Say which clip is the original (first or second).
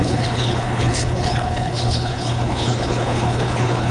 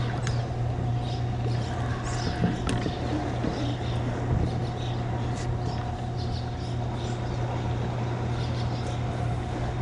second